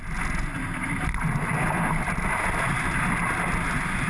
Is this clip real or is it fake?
real